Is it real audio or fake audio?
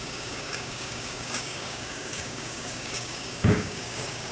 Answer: fake